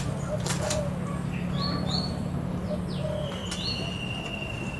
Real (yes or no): yes